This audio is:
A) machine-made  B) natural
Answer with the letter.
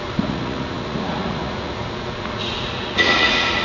A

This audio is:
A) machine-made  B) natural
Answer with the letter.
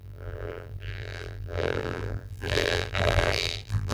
A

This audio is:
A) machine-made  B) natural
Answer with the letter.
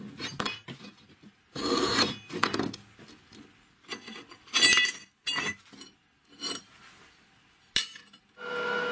B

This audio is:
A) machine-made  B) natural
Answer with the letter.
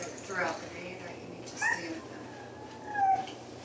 B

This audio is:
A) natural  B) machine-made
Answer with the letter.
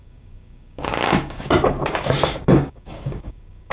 B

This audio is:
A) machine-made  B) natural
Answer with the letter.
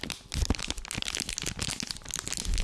B